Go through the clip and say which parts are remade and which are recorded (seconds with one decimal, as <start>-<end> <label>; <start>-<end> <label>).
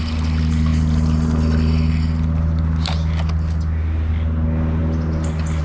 0.0-5.6 recorded